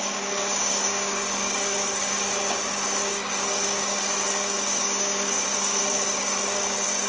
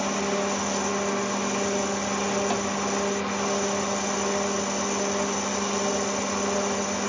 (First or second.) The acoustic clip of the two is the second